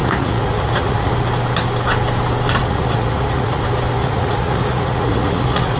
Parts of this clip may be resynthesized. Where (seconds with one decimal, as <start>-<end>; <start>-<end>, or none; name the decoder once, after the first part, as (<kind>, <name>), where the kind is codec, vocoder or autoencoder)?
0.0-1.1 (vocoder, Vocos); 2.6-3.6; 4.0-5.8